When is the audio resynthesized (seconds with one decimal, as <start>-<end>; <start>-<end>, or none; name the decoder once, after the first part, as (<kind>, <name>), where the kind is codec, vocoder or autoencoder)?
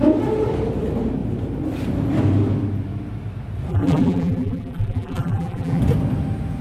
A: 3.7-5.8 (vocoder, BigVGAN v2)